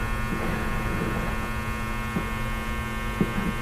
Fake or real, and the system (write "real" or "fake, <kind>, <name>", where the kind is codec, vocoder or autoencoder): real